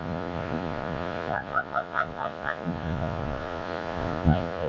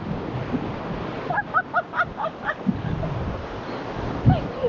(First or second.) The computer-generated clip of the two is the first